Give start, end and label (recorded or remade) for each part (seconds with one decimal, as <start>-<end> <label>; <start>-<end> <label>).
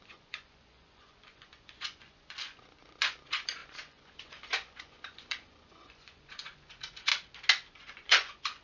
0.0-7.1 remade; 7.1-7.7 recorded; 7.7-8.6 remade